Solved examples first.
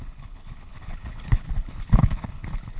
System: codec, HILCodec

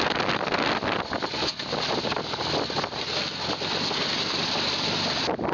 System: none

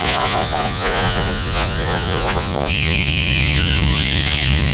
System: vocoder, Vocos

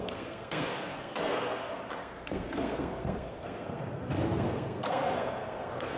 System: codec, SNAC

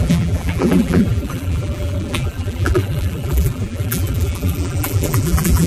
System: vocoder, BigVGAN v2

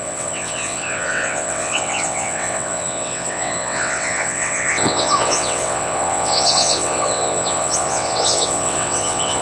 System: vocoder, WaveNeXt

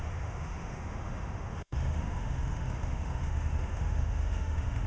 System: autoencoder, DAC-VAE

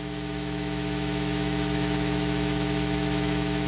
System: autoencoder, DAC-VAE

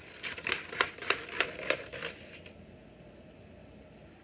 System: none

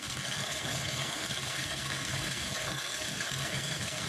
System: codec, SNAC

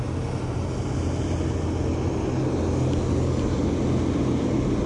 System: none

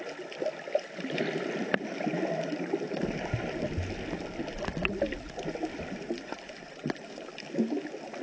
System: none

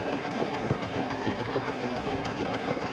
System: codec, SNAC